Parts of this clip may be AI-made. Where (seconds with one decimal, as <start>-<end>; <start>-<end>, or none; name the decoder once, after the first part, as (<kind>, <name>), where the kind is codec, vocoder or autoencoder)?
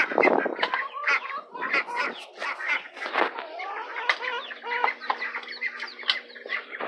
none